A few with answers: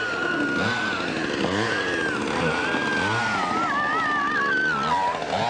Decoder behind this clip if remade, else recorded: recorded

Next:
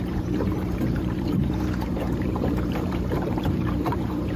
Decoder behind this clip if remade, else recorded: remade, vocoder, BigVGAN v2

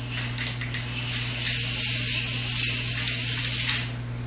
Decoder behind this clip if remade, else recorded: recorded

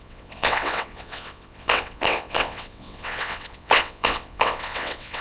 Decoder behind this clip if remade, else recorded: remade, vocoder, WaveNeXt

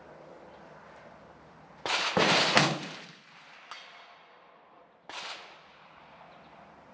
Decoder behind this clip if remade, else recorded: recorded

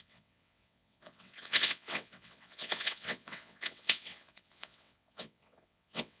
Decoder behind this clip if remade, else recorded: remade, vocoder, WaveNeXt